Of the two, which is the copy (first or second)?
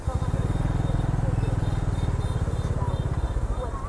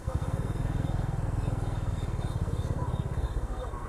second